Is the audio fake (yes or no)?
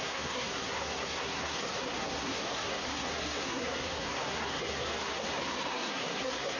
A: yes